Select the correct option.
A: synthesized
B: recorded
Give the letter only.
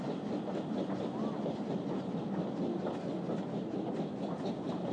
B